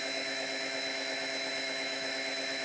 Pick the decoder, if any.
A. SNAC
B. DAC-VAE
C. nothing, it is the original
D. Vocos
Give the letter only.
B